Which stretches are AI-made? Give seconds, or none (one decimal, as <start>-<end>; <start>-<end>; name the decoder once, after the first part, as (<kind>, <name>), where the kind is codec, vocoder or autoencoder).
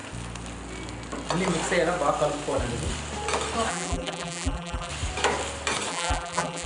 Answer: 3.7-4.9 (vocoder, BigVGAN v2); 5.9-6.7